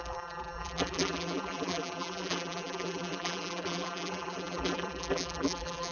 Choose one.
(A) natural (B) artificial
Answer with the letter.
B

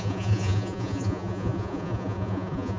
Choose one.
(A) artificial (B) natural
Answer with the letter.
A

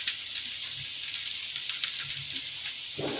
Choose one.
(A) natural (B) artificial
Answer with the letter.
A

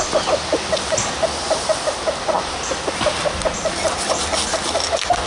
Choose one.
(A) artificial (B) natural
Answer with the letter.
B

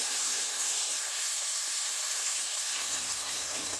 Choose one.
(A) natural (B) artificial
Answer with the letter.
B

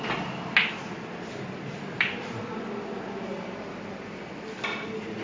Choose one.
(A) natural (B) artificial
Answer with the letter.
A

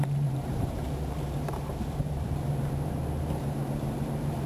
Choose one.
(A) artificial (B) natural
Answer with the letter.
A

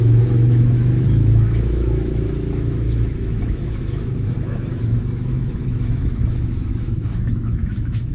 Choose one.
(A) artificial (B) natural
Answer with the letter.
A